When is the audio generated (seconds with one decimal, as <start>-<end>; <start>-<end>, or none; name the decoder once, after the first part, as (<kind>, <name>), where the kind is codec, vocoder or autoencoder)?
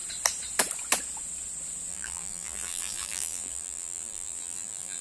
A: 1.9-5.0 (vocoder, BigVGAN v2)